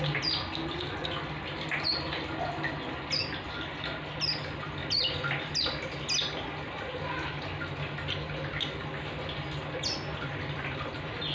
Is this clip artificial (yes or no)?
no